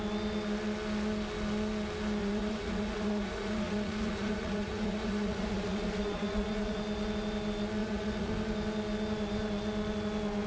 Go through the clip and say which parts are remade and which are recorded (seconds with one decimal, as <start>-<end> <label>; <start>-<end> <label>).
0.0-2.2 recorded; 2.2-6.8 remade; 6.8-7.8 recorded; 7.8-8.3 remade; 8.3-10.5 recorded